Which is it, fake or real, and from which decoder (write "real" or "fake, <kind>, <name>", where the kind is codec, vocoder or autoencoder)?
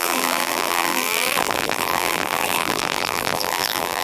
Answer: fake, vocoder, BigVGAN v2